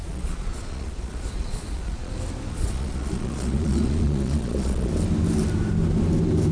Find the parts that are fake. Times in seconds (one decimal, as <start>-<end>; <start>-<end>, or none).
0.0-2.1; 2.5-4.9